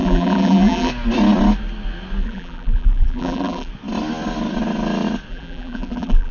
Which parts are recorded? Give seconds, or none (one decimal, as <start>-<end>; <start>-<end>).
0.9-2.2; 3.7-5.3